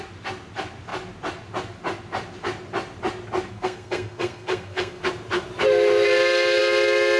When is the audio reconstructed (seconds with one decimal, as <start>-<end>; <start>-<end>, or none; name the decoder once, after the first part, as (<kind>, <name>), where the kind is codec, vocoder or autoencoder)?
3.5-5.0 (codec, SNAC)